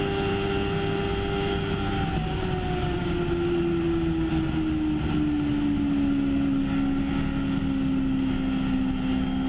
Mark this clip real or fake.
real